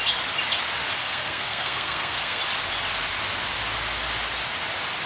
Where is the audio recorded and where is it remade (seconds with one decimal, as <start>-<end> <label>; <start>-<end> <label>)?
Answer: 0.0-1.0 recorded; 1.0-2.4 remade; 2.4-5.1 recorded